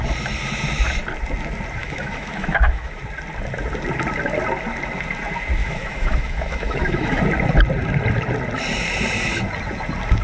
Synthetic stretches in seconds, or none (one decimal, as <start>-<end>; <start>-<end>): 1.8-3.0; 5.6-7.2